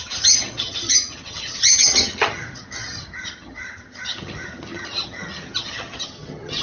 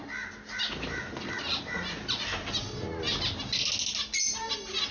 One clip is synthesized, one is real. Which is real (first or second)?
second